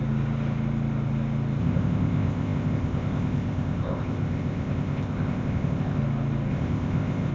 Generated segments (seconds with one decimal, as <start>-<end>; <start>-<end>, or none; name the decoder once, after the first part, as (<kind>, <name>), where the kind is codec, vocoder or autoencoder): 1.6-6.0 (codec, ZipCodec); 6.5-7.3